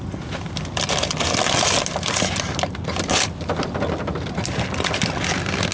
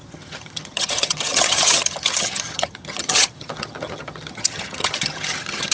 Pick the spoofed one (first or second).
second